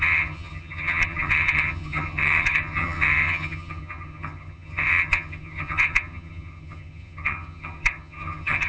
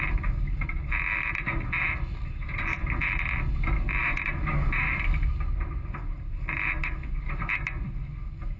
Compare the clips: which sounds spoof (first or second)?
first